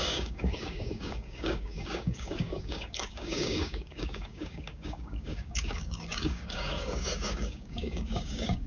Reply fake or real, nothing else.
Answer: fake